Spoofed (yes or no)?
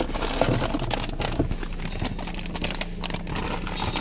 no